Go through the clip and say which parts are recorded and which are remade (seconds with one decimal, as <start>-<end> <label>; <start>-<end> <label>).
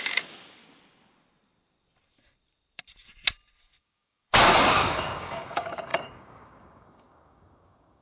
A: 0.0-0.6 remade; 0.6-3.8 recorded; 3.8-8.0 remade